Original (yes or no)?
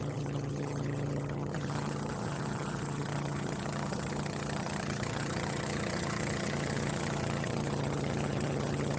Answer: no